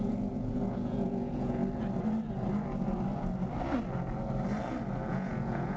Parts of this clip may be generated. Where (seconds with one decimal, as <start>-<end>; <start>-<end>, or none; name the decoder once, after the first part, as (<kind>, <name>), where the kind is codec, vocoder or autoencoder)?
0.0-1.6 (vocoder, Vocos); 5.1-5.8